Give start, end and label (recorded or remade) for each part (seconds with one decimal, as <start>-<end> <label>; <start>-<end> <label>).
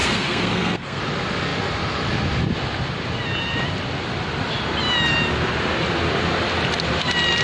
0.0-1.0 remade; 1.0-7.4 recorded